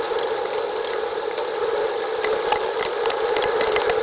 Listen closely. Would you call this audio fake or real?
real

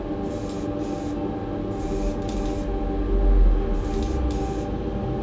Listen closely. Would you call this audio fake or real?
real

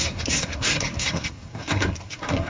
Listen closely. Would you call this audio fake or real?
fake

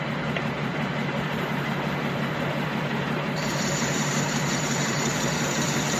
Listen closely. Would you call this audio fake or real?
fake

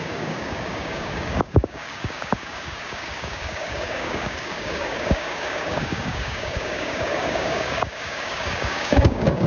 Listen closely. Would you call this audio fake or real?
fake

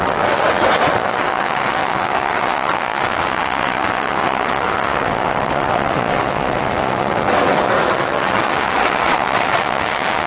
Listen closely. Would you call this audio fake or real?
fake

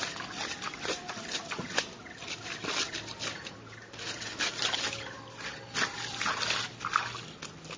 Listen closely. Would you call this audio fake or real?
real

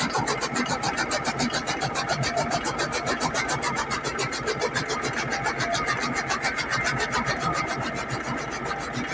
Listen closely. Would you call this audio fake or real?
real